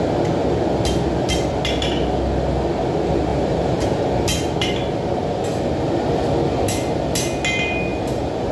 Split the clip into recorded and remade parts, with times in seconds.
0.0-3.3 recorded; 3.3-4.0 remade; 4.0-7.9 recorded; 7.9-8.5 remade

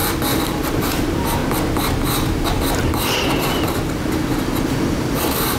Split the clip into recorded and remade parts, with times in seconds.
0.0-0.5 recorded; 0.5-1.4 remade; 1.4-4.8 recorded; 4.8-5.6 remade

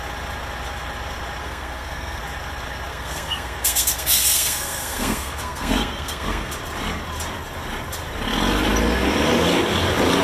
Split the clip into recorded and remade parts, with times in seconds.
0.0-1.4 recorded; 1.4-2.2 remade; 2.2-2.9 recorded; 2.9-6.5 remade; 6.5-10.2 recorded

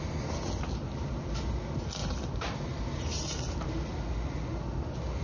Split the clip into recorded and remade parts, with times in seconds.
0.0-2.0 recorded; 2.0-3.4 remade; 3.4-5.2 recorded

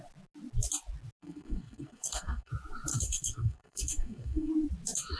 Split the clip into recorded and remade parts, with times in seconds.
0.0-1.2 recorded; 1.2-2.5 remade; 2.5-2.9 recorded; 2.9-4.5 remade; 4.5-5.2 recorded